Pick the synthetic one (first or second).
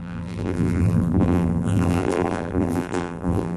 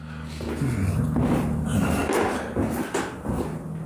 first